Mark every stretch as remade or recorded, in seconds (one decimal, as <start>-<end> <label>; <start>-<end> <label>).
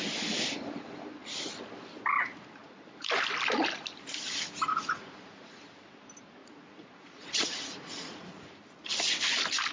0.0-2.6 recorded; 2.6-3.1 remade; 3.1-4.7 recorded; 4.7-5.6 remade; 5.6-6.4 recorded; 6.4-8.3 remade; 8.3-9.7 recorded